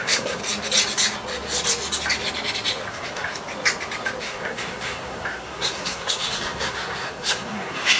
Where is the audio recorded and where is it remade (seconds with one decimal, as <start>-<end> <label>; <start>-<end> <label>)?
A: 0.0-0.4 remade; 0.4-2.9 recorded; 2.9-3.3 remade; 3.3-4.2 recorded; 4.2-8.0 remade